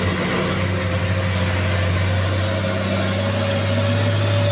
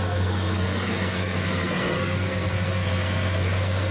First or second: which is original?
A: first